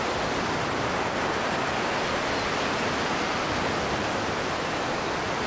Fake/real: real